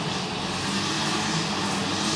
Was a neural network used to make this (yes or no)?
no